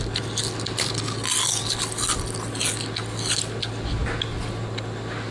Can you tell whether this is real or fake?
real